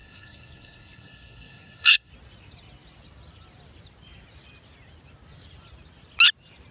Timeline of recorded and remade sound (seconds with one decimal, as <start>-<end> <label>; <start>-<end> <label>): 0.0-2.1 remade; 2.1-6.7 recorded